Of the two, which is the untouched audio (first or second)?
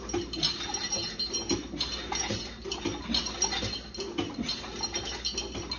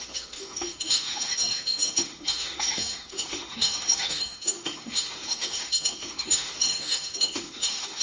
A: first